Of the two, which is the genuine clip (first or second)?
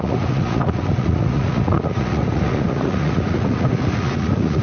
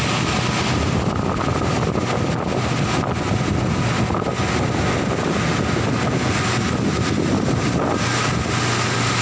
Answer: second